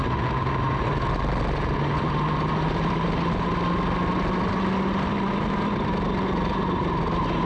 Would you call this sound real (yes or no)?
yes